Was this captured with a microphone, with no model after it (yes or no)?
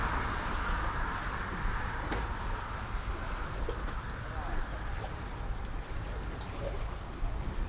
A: yes